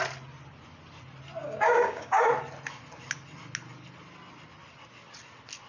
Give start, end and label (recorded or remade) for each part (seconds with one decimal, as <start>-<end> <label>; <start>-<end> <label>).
0.0-1.4 recorded; 1.4-2.3 remade; 2.3-5.7 recorded